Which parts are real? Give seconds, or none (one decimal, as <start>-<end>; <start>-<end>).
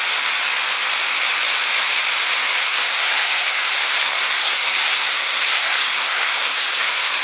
0.0-2.6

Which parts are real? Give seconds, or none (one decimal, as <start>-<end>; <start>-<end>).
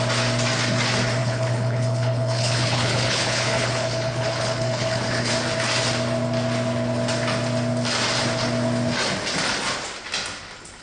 0.0-1.2; 5.3-10.8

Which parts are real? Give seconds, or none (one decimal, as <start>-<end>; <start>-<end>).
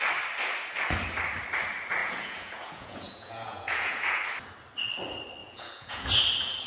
0.0-2.0; 4.2-5.4; 6.2-6.7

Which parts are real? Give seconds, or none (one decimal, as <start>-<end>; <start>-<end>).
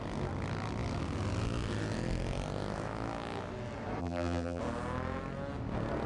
0.0-4.0; 4.6-6.1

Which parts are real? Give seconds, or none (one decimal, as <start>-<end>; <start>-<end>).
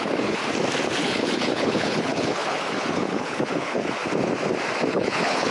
0.4-1.0; 4.0-4.9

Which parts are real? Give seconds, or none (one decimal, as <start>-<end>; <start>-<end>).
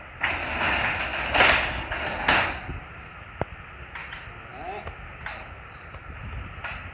0.0-6.9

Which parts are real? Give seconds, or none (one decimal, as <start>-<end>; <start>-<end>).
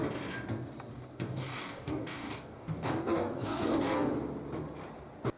0.0-0.9; 4.1-5.4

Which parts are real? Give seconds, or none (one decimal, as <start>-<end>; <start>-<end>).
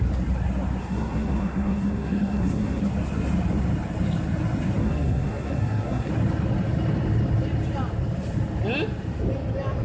0.0-0.8; 2.8-4.8; 6.1-9.8